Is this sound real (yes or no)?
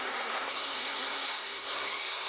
no